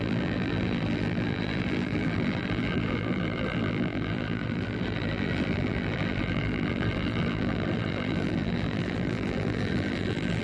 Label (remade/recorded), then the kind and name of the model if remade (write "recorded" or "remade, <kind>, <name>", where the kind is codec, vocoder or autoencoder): remade, vocoder, BigVGAN v2